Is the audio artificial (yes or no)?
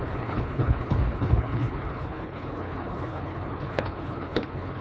yes